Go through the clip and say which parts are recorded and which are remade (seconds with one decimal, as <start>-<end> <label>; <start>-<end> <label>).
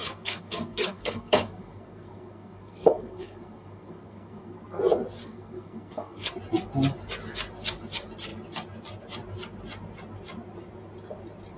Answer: 0.0-4.8 remade; 4.8-5.2 recorded; 5.2-6.3 remade; 6.3-11.6 recorded